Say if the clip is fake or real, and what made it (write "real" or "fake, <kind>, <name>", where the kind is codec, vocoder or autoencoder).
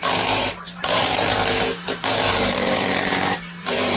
fake, vocoder, BigVGAN v2